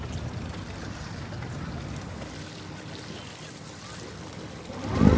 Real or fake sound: real